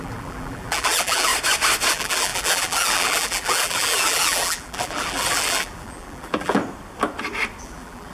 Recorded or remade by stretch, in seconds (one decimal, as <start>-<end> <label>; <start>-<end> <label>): 0.0-1.3 remade; 1.3-1.9 recorded; 1.9-6.6 remade; 6.6-7.6 recorded; 7.6-8.1 remade